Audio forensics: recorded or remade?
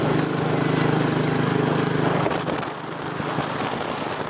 recorded